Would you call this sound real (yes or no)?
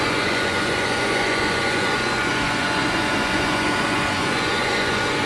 no